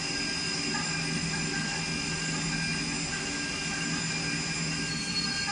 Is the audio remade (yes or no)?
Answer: no